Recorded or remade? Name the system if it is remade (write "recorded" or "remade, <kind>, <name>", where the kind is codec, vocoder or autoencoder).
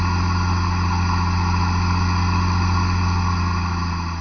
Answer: recorded